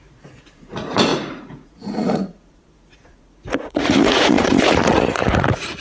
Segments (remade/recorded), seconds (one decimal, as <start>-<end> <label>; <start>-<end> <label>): 0.0-5.8 remade